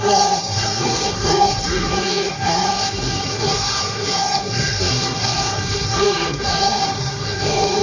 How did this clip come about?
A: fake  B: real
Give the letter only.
A